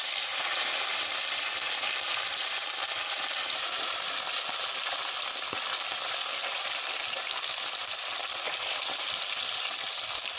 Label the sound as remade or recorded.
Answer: recorded